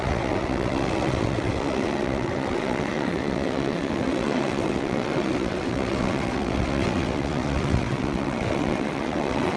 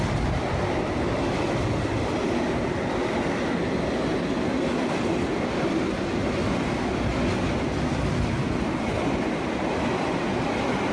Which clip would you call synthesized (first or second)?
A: first